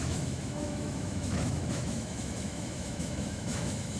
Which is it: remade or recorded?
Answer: remade